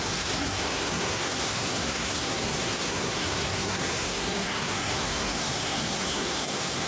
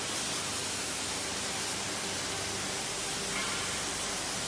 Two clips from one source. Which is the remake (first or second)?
first